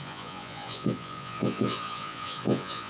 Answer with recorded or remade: remade